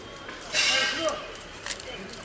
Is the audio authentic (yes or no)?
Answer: no